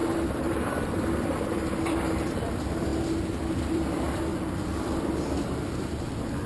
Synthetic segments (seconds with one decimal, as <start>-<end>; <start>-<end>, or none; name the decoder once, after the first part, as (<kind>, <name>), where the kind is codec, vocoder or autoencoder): 0.0-2.9 (vocoder, BigVGAN v2); 3.7-4.3; 5.4-6.5